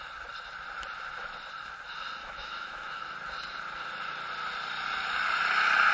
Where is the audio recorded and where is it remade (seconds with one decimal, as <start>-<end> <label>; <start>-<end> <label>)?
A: 0.0-2.2 recorded; 2.2-3.0 remade; 3.0-5.9 recorded